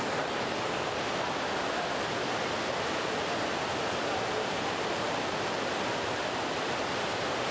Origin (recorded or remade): recorded